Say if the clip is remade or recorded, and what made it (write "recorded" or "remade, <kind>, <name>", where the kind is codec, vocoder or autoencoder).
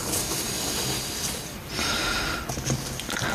recorded